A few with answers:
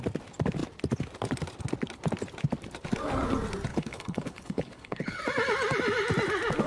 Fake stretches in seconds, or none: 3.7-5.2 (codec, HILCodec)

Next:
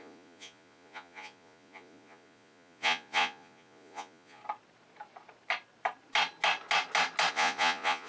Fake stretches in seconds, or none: 0.0-4.4 (vocoder, Vocos); 7.3-8.1

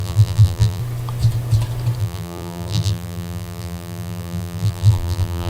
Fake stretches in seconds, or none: 0.0-0.8 (vocoder, BigVGAN v2); 2.0-5.5

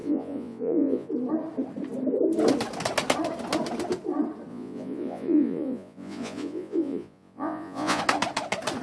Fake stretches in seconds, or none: 0.0-1.1 (vocoder, Vocos); 4.5-8.0

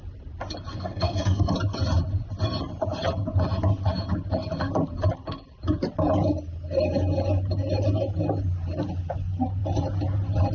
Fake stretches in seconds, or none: 0.7-1.5 (codec, SNAC)

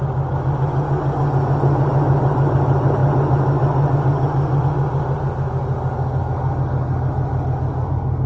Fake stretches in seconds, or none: none

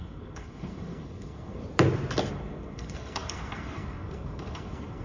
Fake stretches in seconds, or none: 0.0-1.6 (codec, SNAC); 2.3-5.0

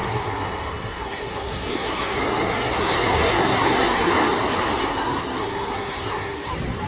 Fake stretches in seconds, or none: 0.0-4.1 (codec, SNAC); 4.8-6.5